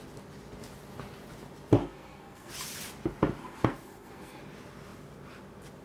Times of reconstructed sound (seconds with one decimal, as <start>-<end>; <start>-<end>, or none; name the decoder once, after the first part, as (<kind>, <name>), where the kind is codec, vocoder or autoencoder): 1.8-2.5 (codec, SNAC); 3.4-4.4